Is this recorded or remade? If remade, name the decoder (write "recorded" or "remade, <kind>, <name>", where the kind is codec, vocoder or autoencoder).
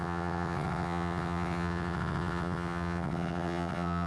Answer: remade, vocoder, WaveNeXt